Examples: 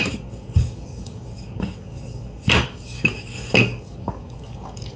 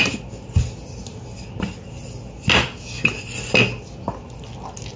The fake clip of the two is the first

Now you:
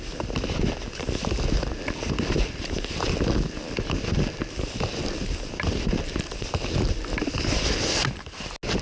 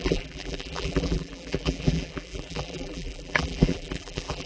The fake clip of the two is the second